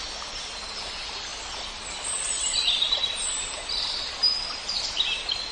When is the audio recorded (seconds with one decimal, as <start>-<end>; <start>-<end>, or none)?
0.0-1.3; 4.6-5.5